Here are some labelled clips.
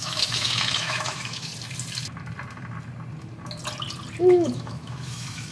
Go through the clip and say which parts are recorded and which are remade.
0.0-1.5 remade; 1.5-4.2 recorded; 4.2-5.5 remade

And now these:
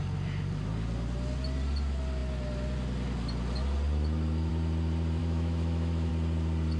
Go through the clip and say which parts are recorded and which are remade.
0.0-5.2 recorded; 5.2-6.1 remade; 6.1-6.8 recorded

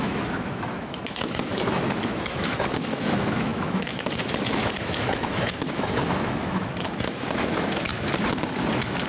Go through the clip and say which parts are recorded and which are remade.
0.0-7.9 remade; 7.9-8.7 recorded; 8.7-9.1 remade

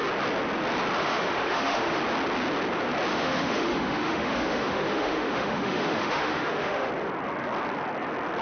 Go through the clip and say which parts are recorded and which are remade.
0.0-1.0 recorded; 1.0-2.0 remade; 2.0-3.1 recorded; 3.1-6.9 remade; 6.9-8.4 recorded

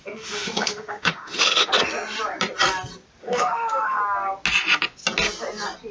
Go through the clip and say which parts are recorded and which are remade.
0.0-1.7 remade; 1.7-3.2 recorded; 3.2-4.0 remade; 4.0-5.9 recorded